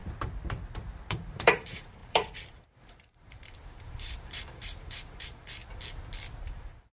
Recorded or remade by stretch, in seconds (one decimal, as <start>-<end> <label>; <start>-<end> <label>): 0.0-1.1 recorded; 1.1-5.6 remade; 5.6-6.4 recorded; 6.4-7.0 remade